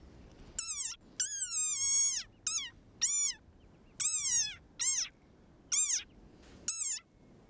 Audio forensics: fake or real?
real